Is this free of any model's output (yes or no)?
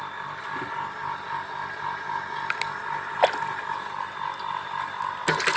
yes